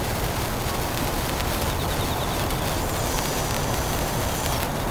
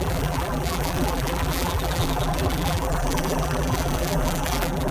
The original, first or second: first